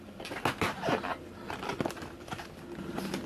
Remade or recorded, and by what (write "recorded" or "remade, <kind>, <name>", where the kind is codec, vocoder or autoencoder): recorded